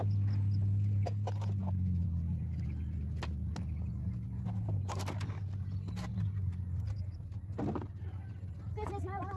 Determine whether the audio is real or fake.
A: real